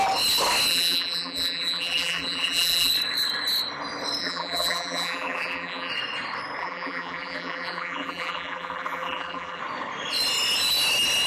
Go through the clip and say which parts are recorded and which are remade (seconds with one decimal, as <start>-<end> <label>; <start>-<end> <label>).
0.0-0.7 recorded; 0.7-2.9 remade; 2.9-4.2 recorded; 4.2-5.9 remade; 5.9-6.6 recorded; 6.6-9.6 remade; 9.6-11.3 recorded